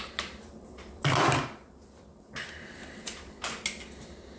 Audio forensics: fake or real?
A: real